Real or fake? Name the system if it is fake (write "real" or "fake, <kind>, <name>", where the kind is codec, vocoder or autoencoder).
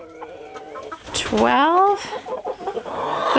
real